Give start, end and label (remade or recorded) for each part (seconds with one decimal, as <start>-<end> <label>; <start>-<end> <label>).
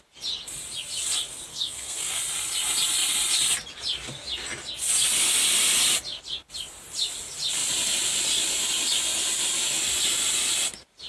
0.0-1.5 recorded; 1.5-2.2 remade; 2.2-11.1 recorded